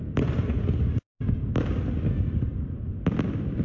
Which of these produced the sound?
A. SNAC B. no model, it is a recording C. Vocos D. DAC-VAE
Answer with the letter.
B